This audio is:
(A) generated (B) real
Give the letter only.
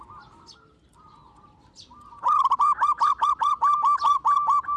B